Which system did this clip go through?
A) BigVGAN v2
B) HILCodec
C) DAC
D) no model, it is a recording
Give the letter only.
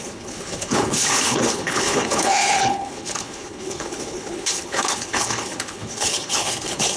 B